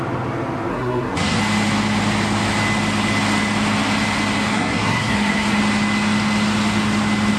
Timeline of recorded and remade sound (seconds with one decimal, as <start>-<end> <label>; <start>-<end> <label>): 0.0-0.7 recorded; 0.7-1.4 remade; 1.4-4.5 recorded; 4.5-5.6 remade; 5.6-7.4 recorded